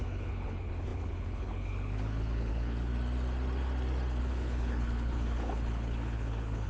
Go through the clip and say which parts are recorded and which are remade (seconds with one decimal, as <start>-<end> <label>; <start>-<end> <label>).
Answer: 0.0-2.9 remade; 2.9-4.2 recorded; 4.2-6.7 remade